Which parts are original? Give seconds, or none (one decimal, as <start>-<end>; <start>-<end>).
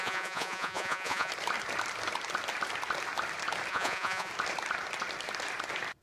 1.3-3.7; 4.3-6.0